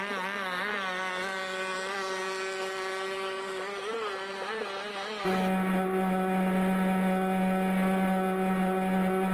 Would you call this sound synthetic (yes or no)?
no